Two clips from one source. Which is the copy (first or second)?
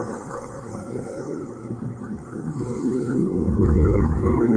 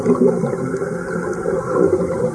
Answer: first